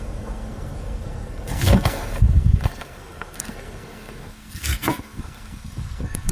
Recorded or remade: remade